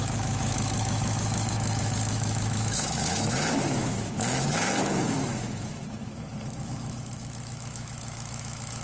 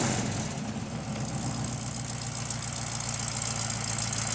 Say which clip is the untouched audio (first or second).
second